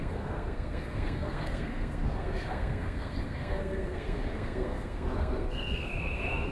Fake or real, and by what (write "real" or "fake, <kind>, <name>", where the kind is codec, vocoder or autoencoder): fake, codec, SNAC